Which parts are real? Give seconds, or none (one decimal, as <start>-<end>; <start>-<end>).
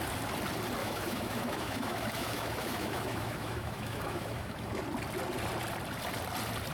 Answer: 0.0-0.8; 4.8-6.7